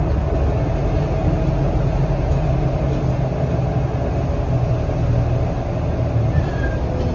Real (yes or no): yes